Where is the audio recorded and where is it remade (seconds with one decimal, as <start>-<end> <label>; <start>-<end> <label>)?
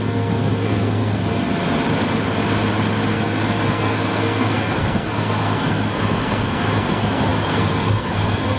0.0-1.2 remade; 1.2-3.1 recorded; 3.1-8.6 remade